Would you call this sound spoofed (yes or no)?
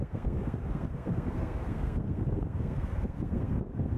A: yes